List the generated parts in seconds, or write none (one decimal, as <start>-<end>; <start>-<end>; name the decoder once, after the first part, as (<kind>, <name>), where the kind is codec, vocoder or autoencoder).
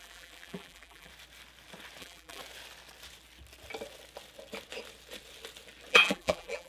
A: 0.0-1.1 (vocoder, BigVGAN v2); 2.0-2.4; 5.9-6.7